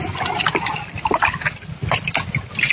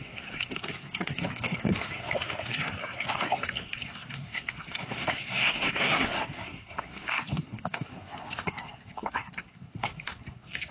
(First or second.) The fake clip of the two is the second